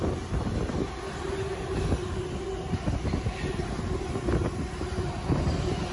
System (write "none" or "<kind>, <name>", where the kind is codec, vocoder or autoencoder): none